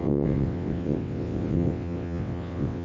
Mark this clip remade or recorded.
remade